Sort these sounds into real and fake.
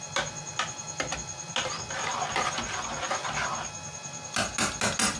real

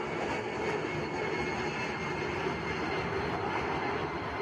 real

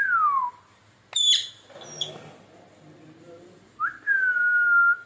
real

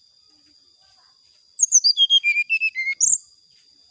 real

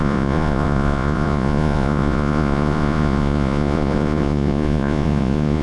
fake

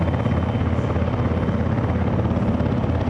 real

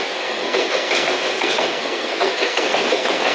fake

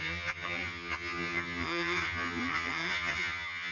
fake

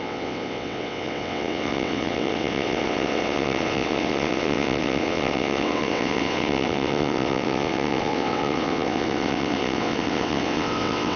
fake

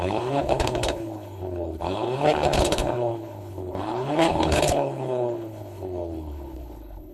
fake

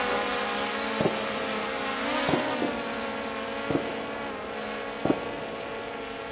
real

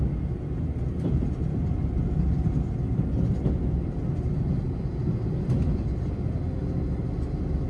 real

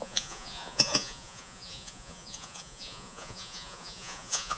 fake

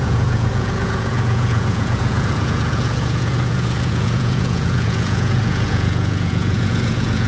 fake